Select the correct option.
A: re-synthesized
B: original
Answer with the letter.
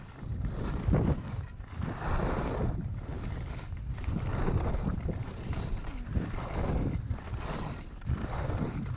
B